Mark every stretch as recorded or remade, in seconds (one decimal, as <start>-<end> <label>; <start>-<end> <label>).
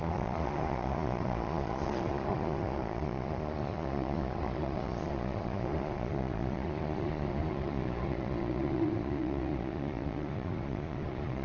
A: 0.0-11.4 remade